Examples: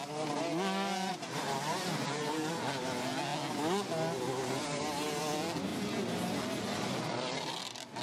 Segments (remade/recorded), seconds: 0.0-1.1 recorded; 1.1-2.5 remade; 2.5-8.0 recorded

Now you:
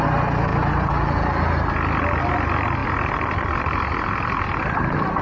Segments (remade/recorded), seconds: 0.0-5.2 recorded

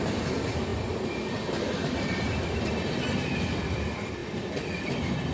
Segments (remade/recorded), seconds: 0.0-5.3 recorded

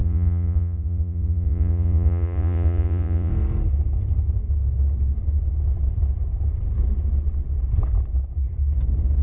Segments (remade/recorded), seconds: 0.0-3.3 remade; 3.3-9.2 recorded

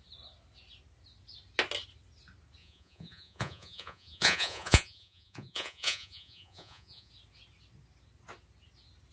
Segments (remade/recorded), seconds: 0.0-2.6 recorded; 2.6-7.1 remade; 7.1-9.1 recorded

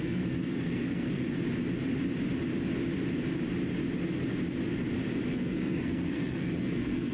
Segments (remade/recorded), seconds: 0.0-1.2 remade; 1.2-5.3 recorded; 5.3-7.1 remade